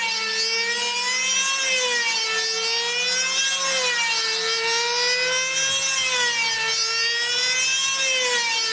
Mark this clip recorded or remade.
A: recorded